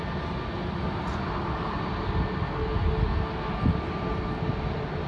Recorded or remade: recorded